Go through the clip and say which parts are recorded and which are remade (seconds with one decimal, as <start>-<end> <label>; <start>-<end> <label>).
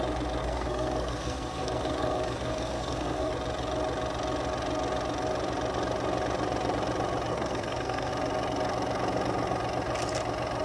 0.0-0.4 recorded; 0.4-3.3 remade; 3.3-7.3 recorded; 7.3-8.1 remade; 8.1-10.6 recorded